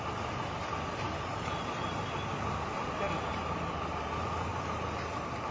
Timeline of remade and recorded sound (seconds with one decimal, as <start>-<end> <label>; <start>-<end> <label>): 0.0-0.6 recorded; 0.6-1.9 remade; 1.9-4.5 recorded; 4.5-5.5 remade